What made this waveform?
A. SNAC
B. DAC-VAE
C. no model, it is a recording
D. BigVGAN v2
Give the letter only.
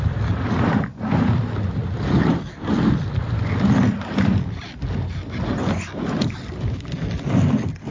C